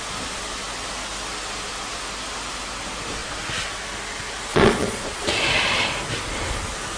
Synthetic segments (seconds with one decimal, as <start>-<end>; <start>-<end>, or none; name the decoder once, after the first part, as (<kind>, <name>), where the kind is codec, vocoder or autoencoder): 4.5-5.3 (vocoder, Vocos)